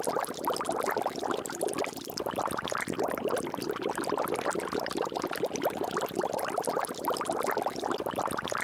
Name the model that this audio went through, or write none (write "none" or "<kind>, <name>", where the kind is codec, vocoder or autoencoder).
none